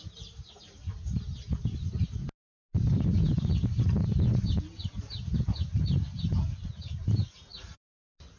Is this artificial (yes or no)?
no